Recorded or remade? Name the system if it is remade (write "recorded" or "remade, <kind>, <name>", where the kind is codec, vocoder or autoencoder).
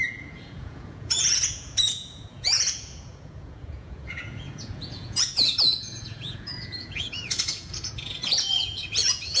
remade, vocoder, Vocos